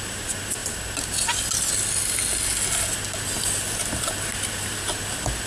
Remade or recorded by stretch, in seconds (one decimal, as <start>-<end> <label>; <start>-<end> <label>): 0.0-5.5 recorded